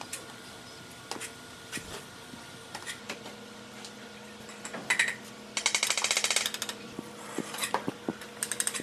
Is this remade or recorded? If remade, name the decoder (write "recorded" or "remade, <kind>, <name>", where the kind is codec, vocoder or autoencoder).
recorded